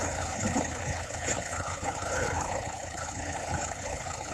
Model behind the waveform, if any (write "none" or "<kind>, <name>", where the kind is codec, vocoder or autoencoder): codec, HILCodec